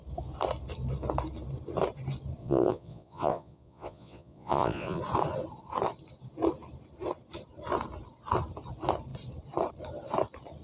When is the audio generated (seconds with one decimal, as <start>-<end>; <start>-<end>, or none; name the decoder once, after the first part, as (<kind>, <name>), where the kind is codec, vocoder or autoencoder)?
2.4-5.0 (vocoder, Vocos)